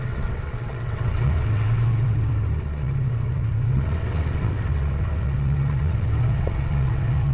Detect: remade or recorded remade